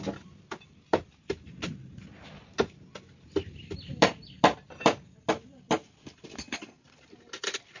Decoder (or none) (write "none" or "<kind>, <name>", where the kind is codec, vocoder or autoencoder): none